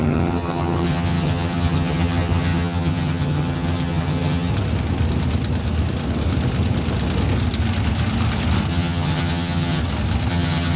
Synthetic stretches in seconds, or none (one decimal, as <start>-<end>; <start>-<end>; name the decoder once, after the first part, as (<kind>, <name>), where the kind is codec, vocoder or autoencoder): 0.0-4.5 (vocoder, HiFi-GAN); 8.7-9.8; 10.3-10.8